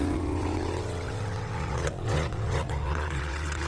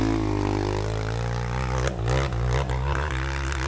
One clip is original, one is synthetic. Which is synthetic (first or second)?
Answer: first